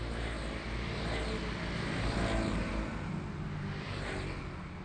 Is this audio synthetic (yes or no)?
no